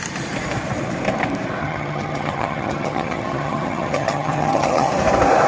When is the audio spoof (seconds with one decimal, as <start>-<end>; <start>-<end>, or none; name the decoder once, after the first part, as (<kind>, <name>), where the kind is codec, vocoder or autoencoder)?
1.6-4.9 (vocoder, HiFi-GAN)